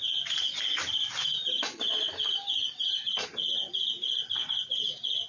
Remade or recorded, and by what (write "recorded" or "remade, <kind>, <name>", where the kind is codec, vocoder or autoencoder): recorded